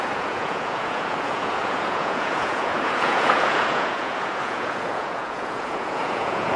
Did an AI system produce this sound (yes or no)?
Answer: yes